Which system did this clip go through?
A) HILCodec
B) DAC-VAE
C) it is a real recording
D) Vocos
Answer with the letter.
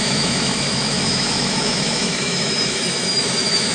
B